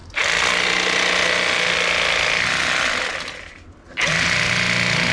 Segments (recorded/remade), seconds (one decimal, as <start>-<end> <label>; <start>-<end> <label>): 0.0-5.1 recorded